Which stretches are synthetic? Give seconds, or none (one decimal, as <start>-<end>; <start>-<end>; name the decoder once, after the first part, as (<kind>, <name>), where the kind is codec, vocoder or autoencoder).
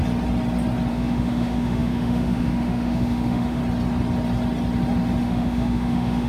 0.9-3.6 (autoencoder, DAC-VAE); 5.2-6.3